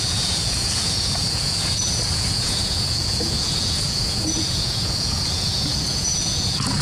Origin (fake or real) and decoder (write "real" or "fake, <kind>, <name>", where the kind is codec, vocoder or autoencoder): fake, vocoder, Vocos